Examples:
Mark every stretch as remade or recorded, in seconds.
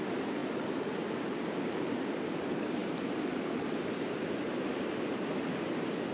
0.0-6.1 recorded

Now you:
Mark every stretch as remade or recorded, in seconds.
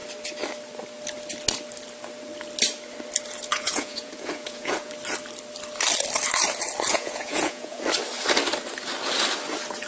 0.0-3.5 recorded; 3.5-4.9 remade; 4.9-6.9 recorded; 6.9-7.8 remade; 7.8-9.9 recorded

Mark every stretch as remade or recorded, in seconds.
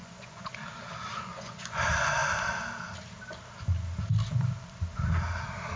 0.0-0.5 remade; 0.5-1.1 recorded; 1.1-1.8 remade; 1.8-5.8 recorded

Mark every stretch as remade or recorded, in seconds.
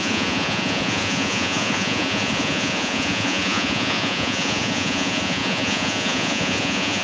0.0-7.0 remade